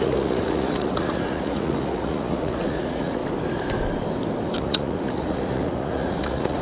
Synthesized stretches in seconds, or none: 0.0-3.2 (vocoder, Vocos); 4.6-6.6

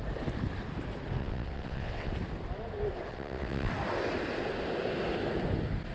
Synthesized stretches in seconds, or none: 1.2-2.1 (vocoder, WaveNeXt); 3.1-3.7

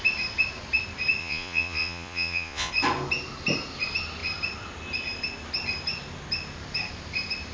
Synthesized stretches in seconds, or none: 1.2-2.7 (vocoder, Vocos)

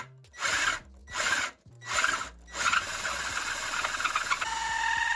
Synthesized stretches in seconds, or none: 1.0-2.1 (vocoder, BigVGAN v2)